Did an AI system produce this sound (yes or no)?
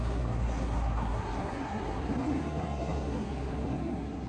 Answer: yes